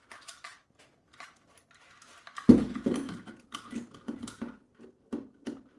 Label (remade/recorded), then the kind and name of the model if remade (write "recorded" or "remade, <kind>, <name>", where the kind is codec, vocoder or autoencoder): recorded